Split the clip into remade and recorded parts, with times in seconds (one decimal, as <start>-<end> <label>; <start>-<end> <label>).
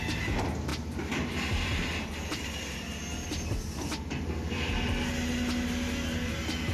0.0-0.7 recorded; 0.7-4.7 remade; 4.7-6.7 recorded